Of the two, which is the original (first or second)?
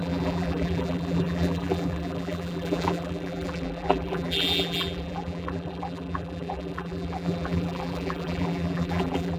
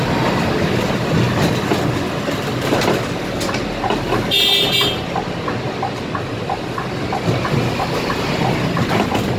second